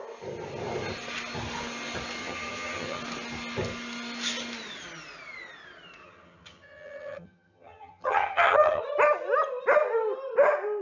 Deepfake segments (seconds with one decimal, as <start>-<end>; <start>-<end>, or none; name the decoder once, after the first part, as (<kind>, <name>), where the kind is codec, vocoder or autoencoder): 2.2-3.0 (vocoder, HiFi-GAN); 6.0-8.8